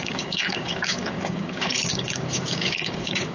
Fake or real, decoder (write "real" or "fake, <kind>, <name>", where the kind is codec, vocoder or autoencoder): fake, codec, DAC